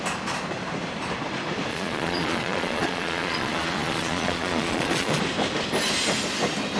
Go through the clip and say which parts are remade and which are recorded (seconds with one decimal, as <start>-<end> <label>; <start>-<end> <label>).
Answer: 0.0-1.7 recorded; 1.7-5.2 remade; 5.2-6.8 recorded